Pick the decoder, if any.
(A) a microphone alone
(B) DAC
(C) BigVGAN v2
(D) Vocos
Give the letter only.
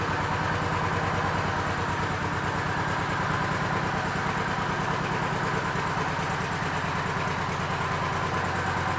A